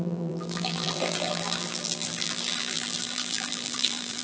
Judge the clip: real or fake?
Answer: fake